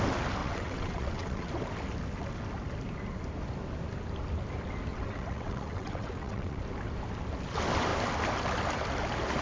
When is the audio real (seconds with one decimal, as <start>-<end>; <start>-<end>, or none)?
0.0-0.4; 1.5-4.9; 6.6-9.4